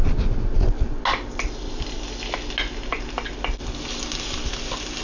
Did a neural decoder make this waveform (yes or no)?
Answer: no